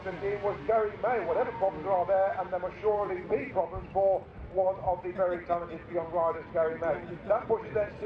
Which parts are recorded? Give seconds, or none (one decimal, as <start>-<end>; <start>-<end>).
0.0-4.3; 5.1-8.1